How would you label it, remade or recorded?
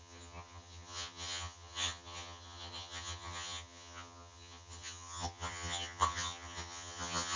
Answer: remade